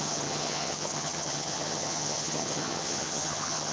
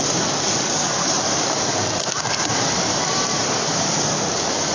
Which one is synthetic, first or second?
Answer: first